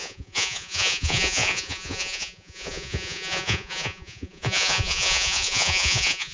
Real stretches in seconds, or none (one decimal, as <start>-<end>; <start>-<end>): none